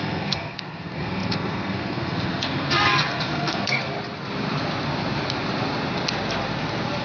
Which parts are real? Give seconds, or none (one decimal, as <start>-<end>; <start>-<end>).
3.9-7.0